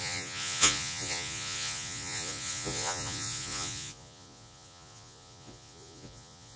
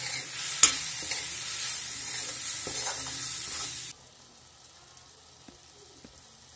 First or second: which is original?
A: second